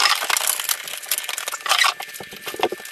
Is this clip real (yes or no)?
yes